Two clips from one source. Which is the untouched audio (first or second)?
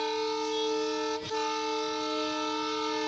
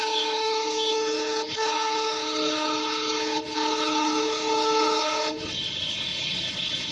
first